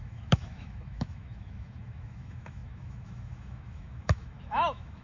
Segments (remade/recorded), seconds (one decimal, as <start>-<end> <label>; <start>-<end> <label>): 0.0-5.0 remade

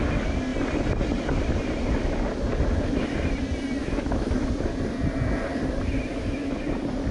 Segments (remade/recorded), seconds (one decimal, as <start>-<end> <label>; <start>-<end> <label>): 0.0-3.8 recorded; 3.8-4.5 remade; 4.5-6.1 recorded; 6.1-6.6 remade; 6.6-7.1 recorded

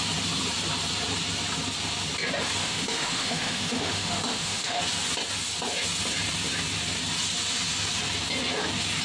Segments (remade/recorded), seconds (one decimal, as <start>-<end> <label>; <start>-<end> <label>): 0.0-2.6 recorded; 2.6-4.8 remade; 4.8-9.0 recorded

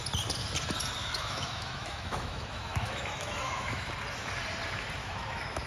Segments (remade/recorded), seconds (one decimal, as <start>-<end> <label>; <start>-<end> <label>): 0.0-1.0 recorded; 1.0-3.9 remade; 3.9-5.0 recorded; 5.0-5.7 remade